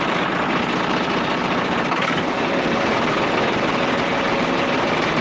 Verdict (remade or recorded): recorded